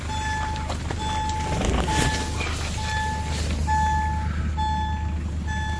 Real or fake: real